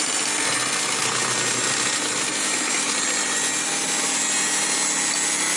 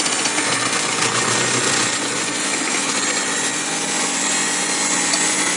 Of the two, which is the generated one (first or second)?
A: second